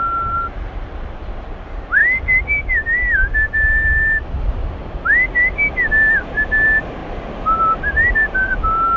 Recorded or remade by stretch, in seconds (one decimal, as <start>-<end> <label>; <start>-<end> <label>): 0.0-9.0 recorded